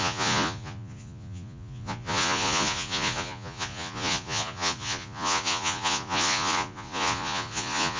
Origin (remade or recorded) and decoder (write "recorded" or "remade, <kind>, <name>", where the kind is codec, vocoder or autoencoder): remade, vocoder, Vocos